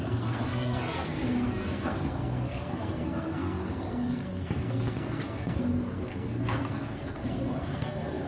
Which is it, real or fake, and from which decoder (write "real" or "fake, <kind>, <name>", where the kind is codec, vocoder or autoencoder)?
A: fake, codec, SNAC